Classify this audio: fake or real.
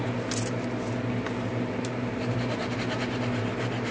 real